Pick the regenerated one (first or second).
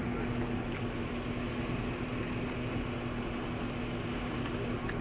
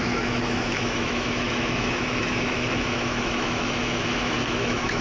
second